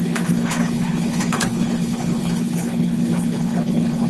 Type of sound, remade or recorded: remade